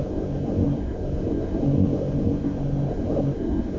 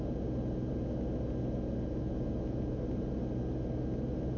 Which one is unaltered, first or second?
second